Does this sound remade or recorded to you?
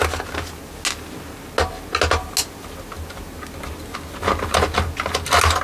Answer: recorded